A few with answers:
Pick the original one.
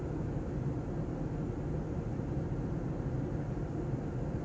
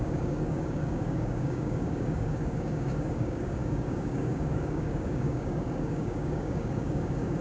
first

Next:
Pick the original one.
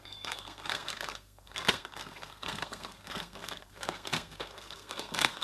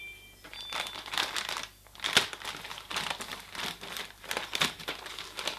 second